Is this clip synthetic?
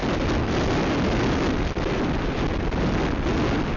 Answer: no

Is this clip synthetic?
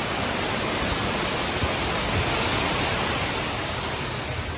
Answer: no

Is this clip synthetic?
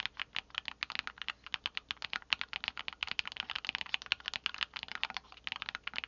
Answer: no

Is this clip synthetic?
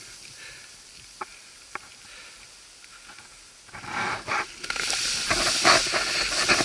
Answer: no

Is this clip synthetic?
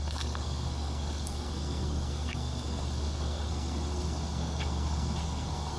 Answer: yes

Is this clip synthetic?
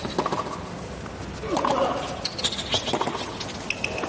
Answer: no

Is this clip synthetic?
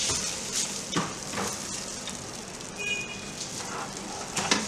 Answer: no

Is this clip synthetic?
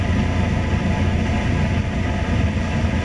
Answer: no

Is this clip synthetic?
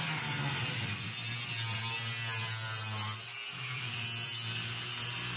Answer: no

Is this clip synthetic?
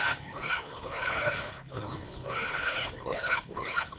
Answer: yes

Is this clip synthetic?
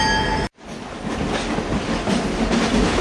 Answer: no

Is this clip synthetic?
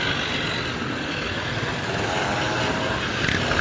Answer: no